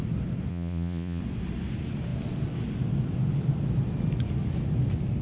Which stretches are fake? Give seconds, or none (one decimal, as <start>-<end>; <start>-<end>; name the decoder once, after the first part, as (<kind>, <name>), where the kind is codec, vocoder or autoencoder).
0.5-1.2 (vocoder, Vocos)